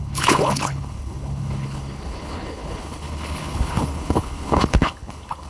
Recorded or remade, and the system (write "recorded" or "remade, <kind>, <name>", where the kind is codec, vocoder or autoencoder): remade, codec, HILCodec